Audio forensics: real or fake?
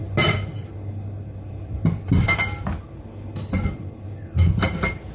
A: real